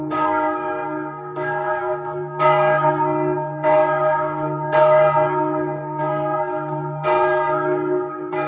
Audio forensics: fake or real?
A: fake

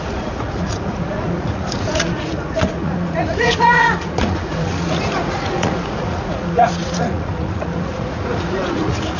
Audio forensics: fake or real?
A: fake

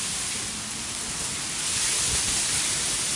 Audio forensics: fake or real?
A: real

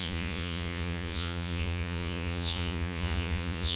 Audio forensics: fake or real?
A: fake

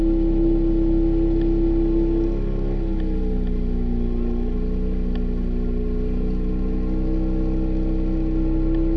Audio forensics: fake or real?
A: real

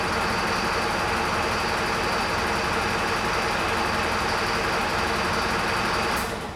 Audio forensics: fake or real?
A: real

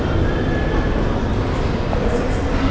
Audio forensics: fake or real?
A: real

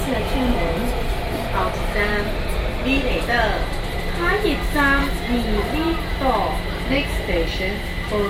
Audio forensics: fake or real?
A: real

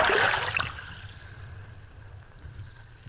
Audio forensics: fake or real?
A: real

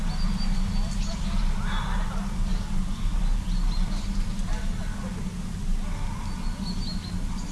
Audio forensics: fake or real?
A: real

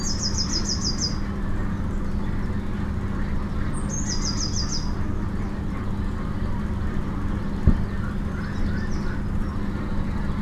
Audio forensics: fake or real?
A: real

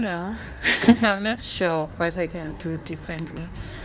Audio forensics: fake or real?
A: fake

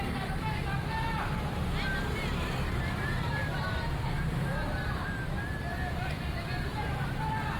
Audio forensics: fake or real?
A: real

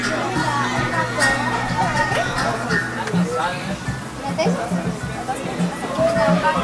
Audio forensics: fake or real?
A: real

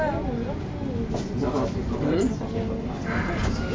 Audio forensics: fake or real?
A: real